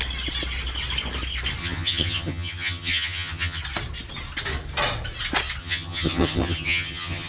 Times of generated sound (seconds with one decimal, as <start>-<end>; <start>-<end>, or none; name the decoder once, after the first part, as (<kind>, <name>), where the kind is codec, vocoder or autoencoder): 1.6-3.6 (vocoder, HiFi-GAN); 5.6-7.3